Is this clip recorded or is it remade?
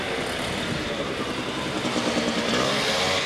recorded